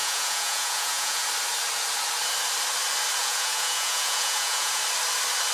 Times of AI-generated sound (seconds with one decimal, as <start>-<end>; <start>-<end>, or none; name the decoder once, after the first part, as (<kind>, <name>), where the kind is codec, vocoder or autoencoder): 0.0-1.3 (vocoder, Vocos); 3.2-4.8